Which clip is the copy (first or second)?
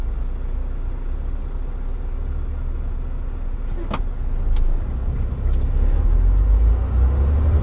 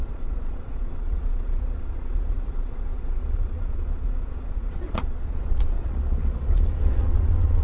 second